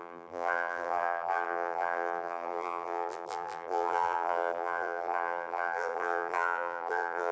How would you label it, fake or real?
fake